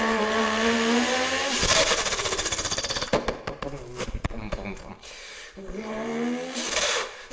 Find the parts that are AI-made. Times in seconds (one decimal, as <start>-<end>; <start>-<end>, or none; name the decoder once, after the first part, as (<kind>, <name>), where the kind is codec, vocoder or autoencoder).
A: 0.0-6.1 (vocoder, BigVGAN v2)